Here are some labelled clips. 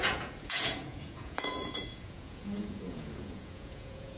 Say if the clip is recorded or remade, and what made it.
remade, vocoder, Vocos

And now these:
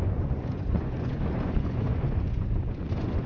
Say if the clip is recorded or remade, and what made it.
remade, vocoder, Vocos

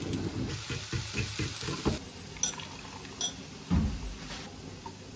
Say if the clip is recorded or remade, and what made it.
recorded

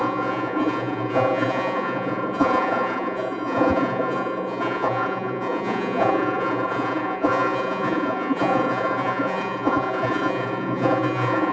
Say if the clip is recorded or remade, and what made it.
remade, vocoder, Vocos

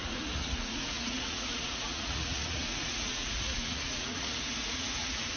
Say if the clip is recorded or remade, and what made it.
remade, vocoder, Vocos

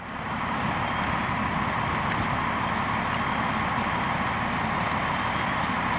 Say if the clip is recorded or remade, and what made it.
recorded